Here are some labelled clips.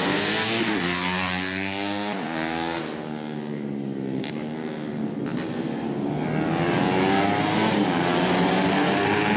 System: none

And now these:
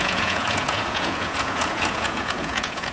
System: vocoder, Vocos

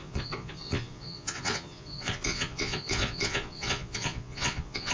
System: vocoder, Vocos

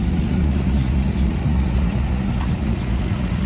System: vocoder, Vocos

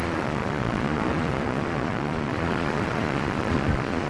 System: vocoder, Vocos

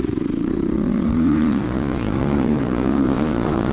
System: vocoder, Vocos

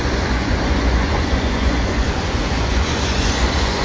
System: vocoder, Vocos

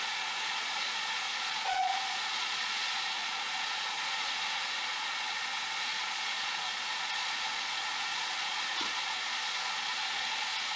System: vocoder, Vocos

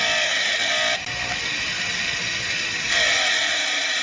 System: none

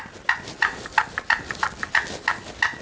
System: none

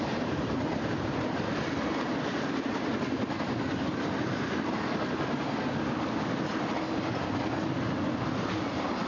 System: none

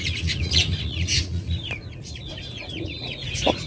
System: vocoder, Vocos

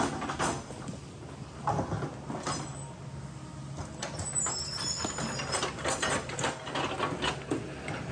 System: none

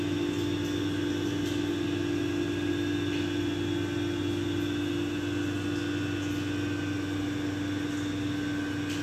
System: none